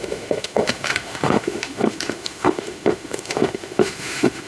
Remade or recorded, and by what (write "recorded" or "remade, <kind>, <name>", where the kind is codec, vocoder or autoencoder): remade, autoencoder, DAC-VAE